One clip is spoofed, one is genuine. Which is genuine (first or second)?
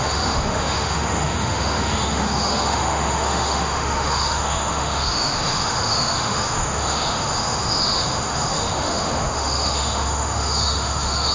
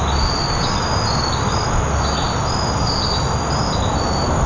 second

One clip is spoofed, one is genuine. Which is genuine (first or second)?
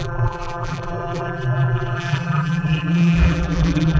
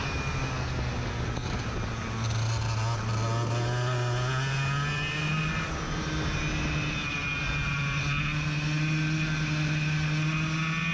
second